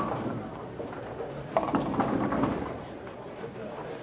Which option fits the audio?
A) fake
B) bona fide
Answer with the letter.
B